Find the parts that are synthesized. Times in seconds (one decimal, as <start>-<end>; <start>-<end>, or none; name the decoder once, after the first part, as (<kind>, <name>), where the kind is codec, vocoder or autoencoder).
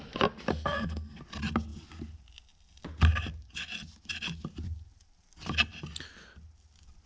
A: 0.5-1.2 (codec, SNAC)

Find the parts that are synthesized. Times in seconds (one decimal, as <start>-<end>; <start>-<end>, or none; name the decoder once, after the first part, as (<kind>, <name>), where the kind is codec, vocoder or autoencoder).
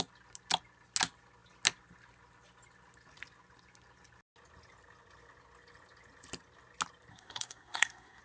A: 7.1-8.2 (codec, SNAC)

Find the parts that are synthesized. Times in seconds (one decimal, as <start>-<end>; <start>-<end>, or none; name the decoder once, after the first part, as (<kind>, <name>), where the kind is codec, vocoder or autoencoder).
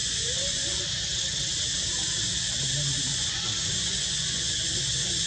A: 0.0-0.8 (vocoder, Vocos); 3.1-5.3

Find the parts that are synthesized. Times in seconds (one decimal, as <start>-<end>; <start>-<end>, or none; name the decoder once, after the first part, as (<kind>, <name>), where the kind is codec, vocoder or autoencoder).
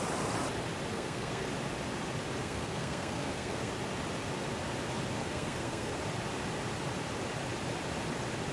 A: 0.9-1.5 (codec, SNAC); 2.4-3.7; 5.2-6.0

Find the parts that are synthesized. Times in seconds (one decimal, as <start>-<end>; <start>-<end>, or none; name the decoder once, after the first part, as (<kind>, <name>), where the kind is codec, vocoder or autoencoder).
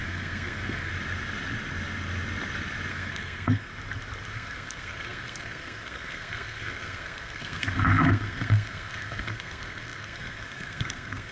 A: 0.0-0.9 (codec, SNAC); 2.9-3.7; 4.3-11.3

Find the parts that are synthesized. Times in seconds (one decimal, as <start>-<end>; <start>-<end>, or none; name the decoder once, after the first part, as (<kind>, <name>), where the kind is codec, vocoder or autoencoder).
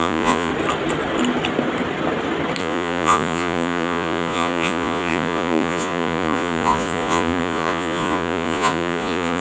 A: 0.0-0.5 (vocoder, Vocos); 2.6-9.4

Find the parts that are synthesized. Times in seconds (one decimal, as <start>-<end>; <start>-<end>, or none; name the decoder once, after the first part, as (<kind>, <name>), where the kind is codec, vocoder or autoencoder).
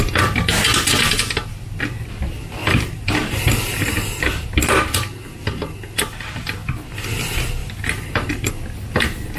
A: 2.6-4.2 (vocoder, BigVGAN v2); 7.6-8.5